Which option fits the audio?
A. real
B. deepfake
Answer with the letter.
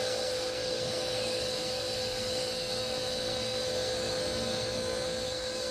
B